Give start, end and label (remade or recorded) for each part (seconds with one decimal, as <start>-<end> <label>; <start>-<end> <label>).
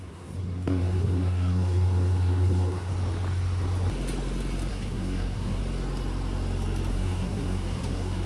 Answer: 0.0-2.9 remade; 2.9-4.7 recorded; 4.7-5.6 remade; 5.6-6.9 recorded; 6.9-8.3 remade